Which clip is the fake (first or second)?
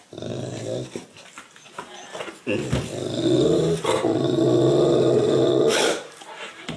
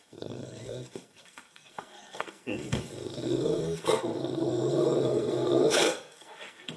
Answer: second